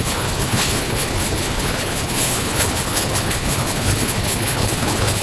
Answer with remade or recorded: remade